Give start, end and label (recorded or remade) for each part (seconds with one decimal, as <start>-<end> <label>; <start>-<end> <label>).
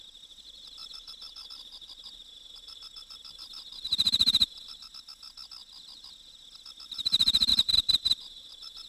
0.0-0.8 recorded; 0.8-4.9 remade; 4.9-7.5 recorded; 7.5-8.9 remade